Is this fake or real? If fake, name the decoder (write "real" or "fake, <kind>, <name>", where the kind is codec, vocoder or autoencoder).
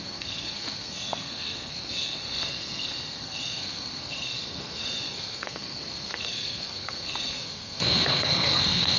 fake, codec, SNAC